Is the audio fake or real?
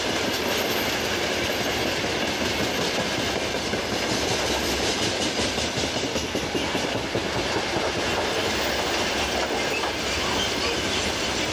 real